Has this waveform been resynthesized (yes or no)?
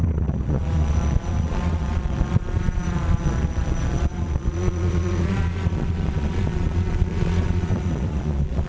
yes